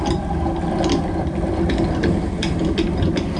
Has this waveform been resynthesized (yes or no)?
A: no